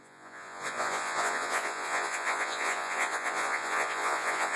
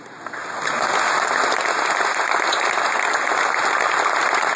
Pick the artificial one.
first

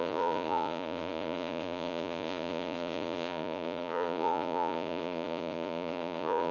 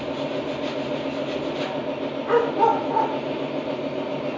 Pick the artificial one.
first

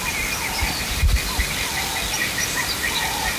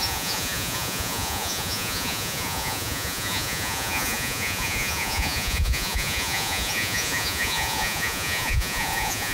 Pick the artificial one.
second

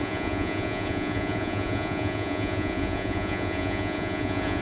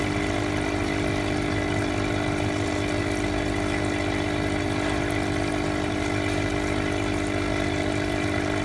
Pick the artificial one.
first